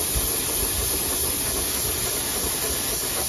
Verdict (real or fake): real